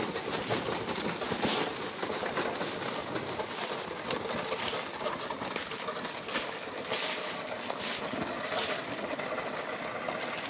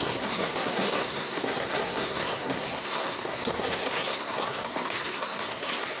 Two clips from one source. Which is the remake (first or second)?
second